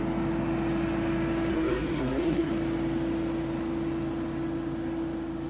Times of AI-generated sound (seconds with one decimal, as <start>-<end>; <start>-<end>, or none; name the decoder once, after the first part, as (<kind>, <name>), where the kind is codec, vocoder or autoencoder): 1.5-2.5 (codec, SNAC)